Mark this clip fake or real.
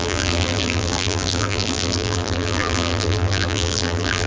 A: fake